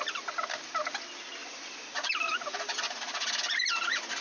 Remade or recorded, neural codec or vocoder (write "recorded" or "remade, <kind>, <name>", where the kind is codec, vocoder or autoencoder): recorded